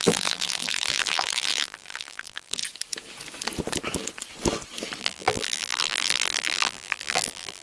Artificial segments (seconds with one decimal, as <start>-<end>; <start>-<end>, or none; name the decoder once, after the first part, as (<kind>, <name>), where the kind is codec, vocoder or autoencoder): 0.0-2.6 (vocoder, BigVGAN v2); 5.0-7.6